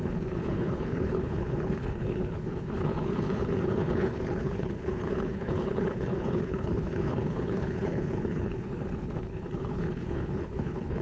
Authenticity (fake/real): fake